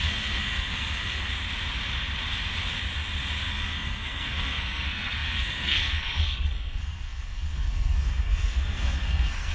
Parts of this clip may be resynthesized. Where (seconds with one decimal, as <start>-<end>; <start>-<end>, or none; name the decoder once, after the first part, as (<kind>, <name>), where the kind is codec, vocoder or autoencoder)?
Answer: 0.0-1.3 (codec, SNAC); 3.5-9.5